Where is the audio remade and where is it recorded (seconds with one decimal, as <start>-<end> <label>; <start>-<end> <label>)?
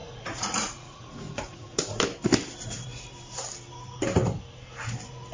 0.0-2.0 remade; 2.0-5.3 recorded